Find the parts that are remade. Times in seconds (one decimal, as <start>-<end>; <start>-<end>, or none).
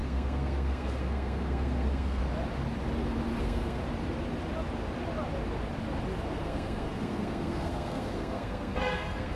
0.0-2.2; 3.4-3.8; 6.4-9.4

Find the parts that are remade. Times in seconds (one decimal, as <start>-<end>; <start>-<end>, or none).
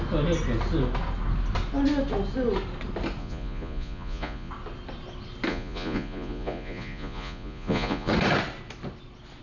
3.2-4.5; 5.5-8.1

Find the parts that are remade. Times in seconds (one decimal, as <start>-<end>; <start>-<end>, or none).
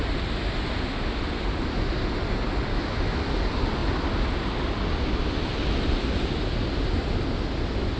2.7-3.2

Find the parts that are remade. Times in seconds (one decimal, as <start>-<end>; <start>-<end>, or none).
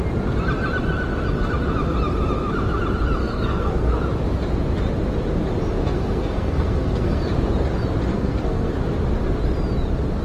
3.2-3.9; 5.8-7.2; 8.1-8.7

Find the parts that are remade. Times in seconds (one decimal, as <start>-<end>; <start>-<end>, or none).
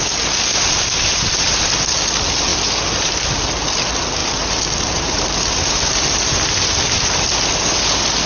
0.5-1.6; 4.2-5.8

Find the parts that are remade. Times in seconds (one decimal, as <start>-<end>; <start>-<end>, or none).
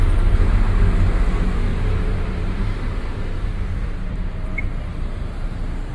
1.7-4.7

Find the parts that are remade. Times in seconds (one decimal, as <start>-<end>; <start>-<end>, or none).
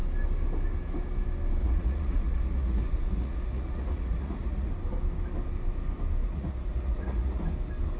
1.6-4.7; 6.2-7.4